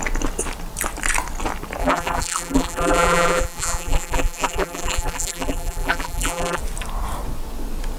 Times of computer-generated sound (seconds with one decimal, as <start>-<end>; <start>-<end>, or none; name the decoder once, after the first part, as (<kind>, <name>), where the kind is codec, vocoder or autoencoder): 1.8-6.6 (vocoder, BigVGAN v2)